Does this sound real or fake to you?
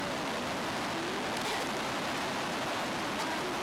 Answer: real